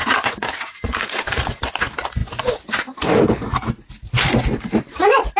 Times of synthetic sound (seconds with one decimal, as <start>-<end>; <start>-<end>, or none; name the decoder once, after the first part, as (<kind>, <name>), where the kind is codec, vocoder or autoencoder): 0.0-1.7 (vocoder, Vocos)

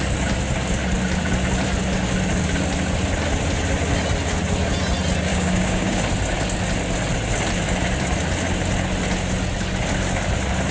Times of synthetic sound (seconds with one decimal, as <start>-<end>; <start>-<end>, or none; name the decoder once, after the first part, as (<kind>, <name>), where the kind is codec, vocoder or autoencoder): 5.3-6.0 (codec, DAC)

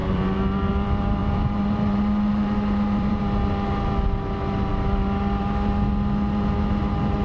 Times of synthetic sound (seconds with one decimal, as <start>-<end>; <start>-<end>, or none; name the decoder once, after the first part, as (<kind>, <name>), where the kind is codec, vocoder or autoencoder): 0.0-0.7 (vocoder, BigVGAN v2); 1.2-3.2